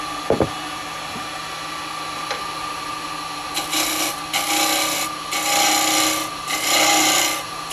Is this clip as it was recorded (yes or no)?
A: yes